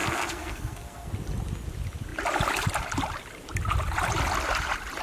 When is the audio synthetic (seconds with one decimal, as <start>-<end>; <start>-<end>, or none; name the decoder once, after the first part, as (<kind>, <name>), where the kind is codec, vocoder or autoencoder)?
0.0-1.1 (codec, SNAC)